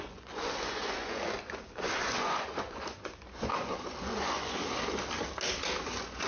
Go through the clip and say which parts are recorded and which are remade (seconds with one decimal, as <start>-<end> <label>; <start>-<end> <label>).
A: 0.0-4.6 remade; 4.6-5.8 recorded; 5.8-6.3 remade